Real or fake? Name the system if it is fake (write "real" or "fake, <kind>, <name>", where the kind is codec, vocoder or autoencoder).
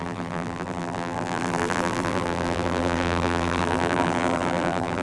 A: fake, vocoder, BigVGAN v2